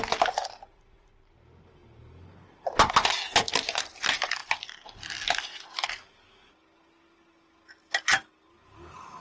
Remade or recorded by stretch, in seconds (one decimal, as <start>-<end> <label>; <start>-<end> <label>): 0.0-9.2 recorded